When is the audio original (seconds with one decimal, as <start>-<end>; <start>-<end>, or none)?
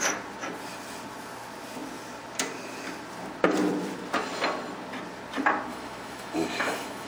0.0-5.7